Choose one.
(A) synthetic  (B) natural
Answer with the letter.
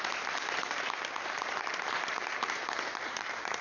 A